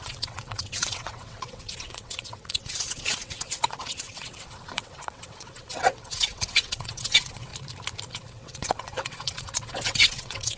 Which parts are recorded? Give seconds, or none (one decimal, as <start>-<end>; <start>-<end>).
7.5-8.1